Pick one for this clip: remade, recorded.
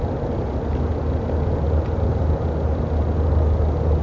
recorded